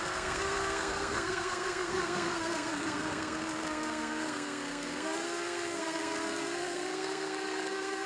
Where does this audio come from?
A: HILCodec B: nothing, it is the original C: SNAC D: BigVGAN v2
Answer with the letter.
C